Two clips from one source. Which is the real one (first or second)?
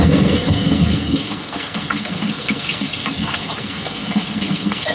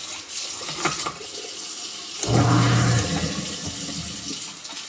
second